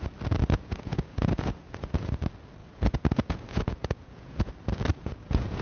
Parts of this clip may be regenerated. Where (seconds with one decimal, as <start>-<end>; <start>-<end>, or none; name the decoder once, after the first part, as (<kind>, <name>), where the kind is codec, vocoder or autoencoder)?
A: 0.4-2.1 (vocoder, Vocos); 2.6-4.5; 4.9-5.6

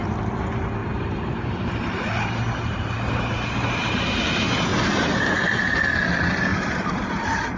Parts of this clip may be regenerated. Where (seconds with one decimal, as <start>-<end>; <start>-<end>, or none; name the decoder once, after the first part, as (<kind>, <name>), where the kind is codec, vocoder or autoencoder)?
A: 0.8-3.1 (vocoder, BigVGAN v2); 4.7-5.2; 6.5-7.6

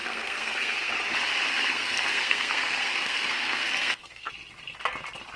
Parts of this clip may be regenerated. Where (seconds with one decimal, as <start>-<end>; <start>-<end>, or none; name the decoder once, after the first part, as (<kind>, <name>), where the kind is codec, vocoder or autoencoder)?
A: 0.0-0.9 (codec, SNAC); 1.5-4.3

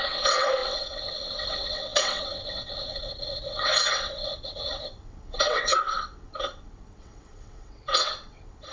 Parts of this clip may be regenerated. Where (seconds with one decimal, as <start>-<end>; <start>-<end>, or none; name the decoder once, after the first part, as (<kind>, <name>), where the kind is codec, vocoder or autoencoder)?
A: 0.0-8.7 (vocoder, WaveNeXt)

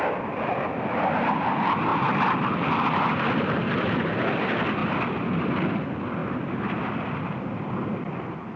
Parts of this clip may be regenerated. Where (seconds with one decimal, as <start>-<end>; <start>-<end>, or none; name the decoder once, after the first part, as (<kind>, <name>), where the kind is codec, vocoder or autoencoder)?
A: 1.9-4.0 (vocoder, BigVGAN v2); 4.8-5.8; 6.2-7.7

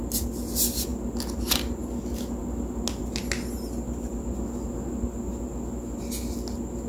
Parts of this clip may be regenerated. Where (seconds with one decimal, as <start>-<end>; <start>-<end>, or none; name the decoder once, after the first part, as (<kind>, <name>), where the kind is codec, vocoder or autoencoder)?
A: none

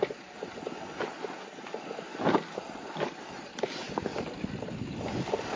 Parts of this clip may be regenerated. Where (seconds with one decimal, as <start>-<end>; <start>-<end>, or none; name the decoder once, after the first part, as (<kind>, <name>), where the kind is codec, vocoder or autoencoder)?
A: 2.1-3.6 (vocoder, BigVGAN v2); 4.1-5.0